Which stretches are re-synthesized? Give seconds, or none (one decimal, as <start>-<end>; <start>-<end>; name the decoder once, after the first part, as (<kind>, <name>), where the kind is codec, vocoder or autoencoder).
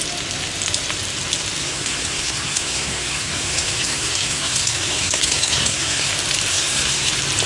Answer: 1.6-6.1 (codec, SNAC); 6.5-7.1